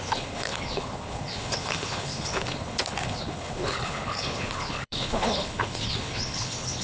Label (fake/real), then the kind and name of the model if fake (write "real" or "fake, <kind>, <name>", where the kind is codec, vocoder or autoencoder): fake, codec, HILCodec